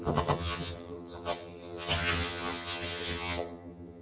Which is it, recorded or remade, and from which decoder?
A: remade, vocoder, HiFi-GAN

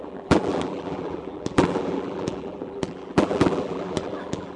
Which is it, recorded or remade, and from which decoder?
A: remade, vocoder, BigVGAN v2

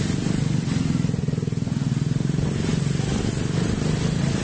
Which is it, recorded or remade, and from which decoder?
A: recorded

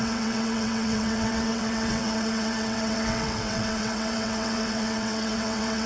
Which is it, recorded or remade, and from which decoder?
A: remade, vocoder, WaveNeXt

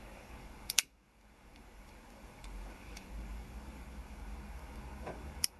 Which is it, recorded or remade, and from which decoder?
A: remade, codec, DAC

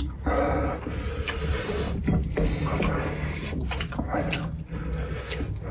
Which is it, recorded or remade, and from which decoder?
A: recorded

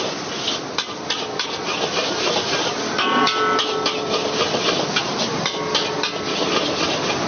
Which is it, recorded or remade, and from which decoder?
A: recorded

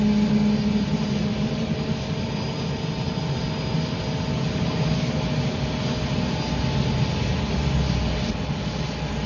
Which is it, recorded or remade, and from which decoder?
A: recorded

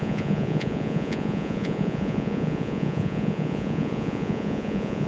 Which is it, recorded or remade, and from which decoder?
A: remade, vocoder, Vocos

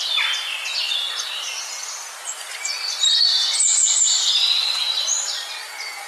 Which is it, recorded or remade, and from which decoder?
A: remade, vocoder, BigVGAN v2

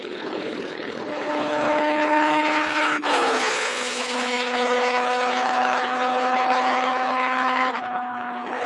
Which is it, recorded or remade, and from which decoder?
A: remade, codec, HILCodec